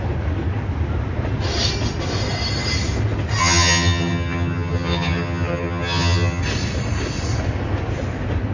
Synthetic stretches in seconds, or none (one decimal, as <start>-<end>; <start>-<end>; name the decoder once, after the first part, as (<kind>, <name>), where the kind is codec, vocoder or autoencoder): 3.4-6.4 (vocoder, HiFi-GAN)